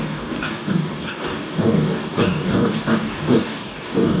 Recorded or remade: remade